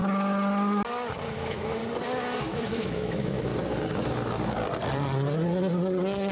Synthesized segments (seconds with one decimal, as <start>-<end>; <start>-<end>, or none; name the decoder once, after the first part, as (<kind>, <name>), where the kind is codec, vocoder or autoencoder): 1.3-1.8 (autoencoder, DAC-VAE); 2.4-3.5